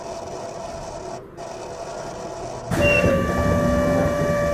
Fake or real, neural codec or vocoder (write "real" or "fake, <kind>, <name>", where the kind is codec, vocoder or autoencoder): real